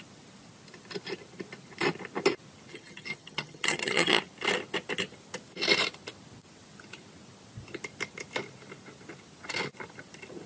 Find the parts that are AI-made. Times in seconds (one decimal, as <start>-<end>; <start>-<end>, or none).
2.7-4.2